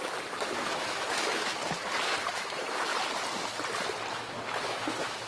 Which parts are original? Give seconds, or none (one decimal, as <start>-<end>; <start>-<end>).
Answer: 1.6-2.3; 2.9-4.1